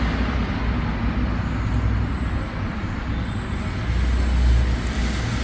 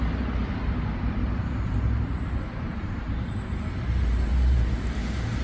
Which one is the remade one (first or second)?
second